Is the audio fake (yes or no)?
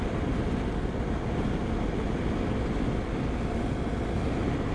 no